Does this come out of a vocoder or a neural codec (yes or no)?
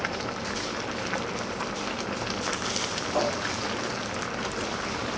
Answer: no